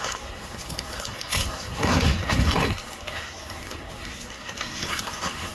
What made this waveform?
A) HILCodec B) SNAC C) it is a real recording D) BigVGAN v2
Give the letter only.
B